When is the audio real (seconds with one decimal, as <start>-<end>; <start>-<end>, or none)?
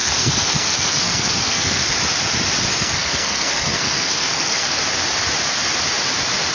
1.9-2.7; 4.8-6.5